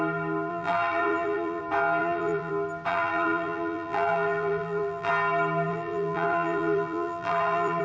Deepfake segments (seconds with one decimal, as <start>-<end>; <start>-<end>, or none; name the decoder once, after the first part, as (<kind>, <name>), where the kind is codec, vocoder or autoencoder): 0.5-1.6 (vocoder, BigVGAN v2); 2.0-2.5; 2.9-5.1; 5.7-7.8